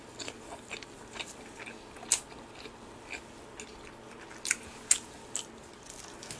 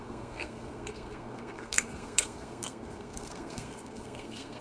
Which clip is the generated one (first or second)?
second